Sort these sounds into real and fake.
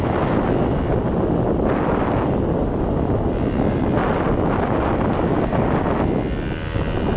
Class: real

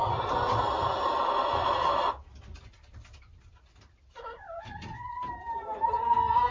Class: real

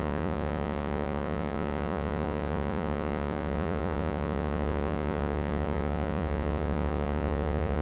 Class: fake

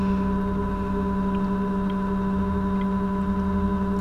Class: real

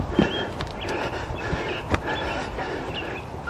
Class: real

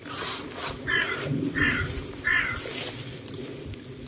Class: real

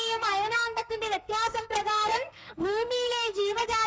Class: fake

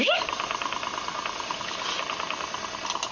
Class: real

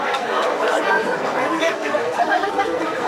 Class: fake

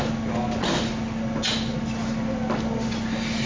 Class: real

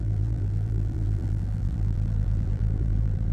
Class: fake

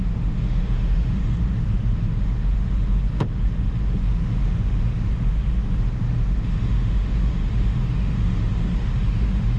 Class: fake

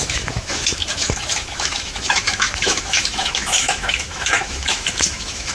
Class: fake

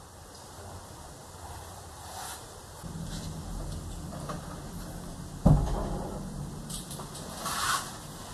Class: real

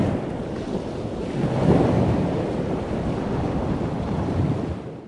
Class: real